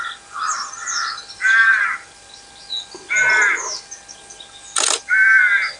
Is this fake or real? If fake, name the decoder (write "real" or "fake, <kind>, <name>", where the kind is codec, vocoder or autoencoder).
real